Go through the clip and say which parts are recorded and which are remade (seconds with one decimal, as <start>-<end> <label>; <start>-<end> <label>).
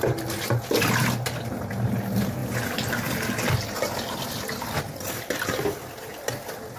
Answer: 0.0-6.8 recorded